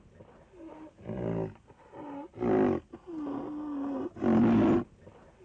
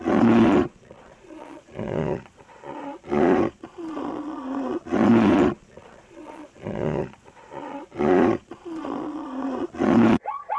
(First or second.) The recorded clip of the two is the first